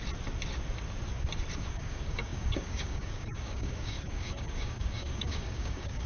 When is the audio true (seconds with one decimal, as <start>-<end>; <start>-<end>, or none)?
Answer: 0.0-1.6